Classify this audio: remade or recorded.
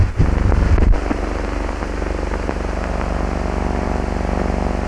recorded